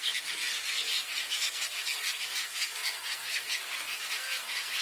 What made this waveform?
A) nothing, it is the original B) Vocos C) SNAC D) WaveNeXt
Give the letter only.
C